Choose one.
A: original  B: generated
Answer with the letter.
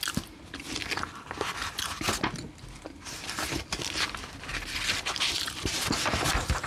A